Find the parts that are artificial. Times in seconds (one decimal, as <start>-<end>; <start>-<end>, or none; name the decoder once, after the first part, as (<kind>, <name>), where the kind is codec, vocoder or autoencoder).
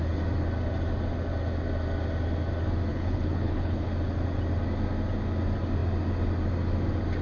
2.9-3.9 (codec, HILCodec)